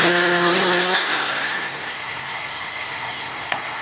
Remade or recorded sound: remade